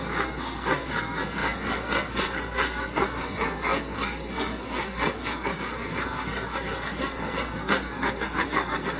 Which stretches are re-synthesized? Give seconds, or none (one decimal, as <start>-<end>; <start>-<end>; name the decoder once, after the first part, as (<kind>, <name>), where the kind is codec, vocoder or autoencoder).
0.0-9.0 (codec, SNAC)